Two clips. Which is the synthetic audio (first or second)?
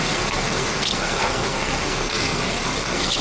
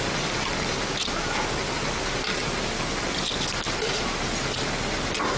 first